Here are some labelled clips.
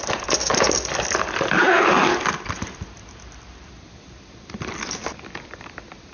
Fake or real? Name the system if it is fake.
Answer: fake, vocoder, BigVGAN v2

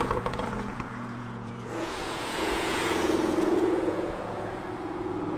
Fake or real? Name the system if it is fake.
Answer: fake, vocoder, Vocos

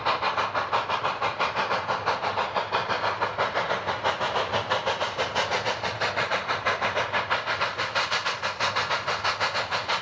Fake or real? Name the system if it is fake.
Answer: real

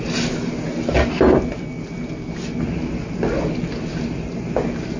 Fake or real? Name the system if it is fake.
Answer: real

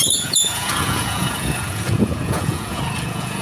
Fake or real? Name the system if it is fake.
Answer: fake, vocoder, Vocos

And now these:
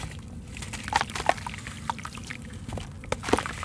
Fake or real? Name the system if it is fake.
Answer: real